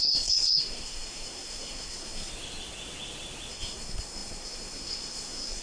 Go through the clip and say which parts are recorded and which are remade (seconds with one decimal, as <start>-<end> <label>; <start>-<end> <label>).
0.0-2.3 remade; 2.3-3.5 recorded; 3.5-5.6 remade